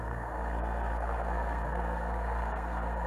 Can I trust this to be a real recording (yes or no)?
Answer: no